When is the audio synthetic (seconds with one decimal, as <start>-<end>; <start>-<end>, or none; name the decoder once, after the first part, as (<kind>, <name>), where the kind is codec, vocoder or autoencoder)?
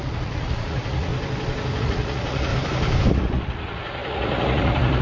0.0-1.1 (vocoder, Vocos); 1.8-2.5; 3.1-5.0